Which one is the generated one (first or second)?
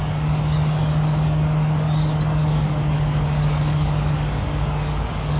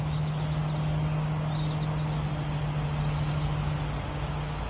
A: first